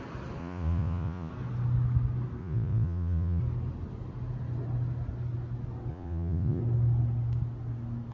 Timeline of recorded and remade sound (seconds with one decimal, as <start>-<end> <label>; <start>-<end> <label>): 0.0-0.4 recorded; 0.4-1.3 remade; 1.3-2.4 recorded; 2.4-3.4 remade; 3.4-5.9 recorded; 5.9-6.6 remade; 6.6-8.1 recorded